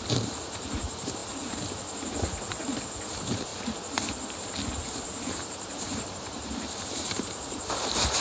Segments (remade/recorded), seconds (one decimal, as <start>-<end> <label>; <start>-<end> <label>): 0.0-1.2 remade; 1.2-3.1 recorded; 3.1-3.5 remade; 3.5-4.9 recorded; 4.9-8.2 remade